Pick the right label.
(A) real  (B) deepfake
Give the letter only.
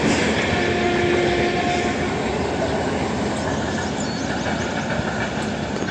A